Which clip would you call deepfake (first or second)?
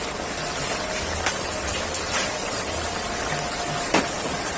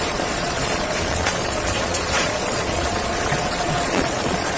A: second